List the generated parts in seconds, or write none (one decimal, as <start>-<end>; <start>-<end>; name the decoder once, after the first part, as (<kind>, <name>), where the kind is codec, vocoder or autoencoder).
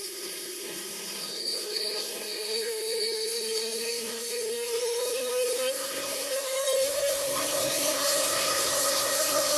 0.0-9.6 (codec, SNAC)